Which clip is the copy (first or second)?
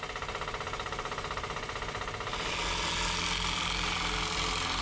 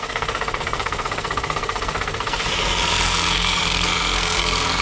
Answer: second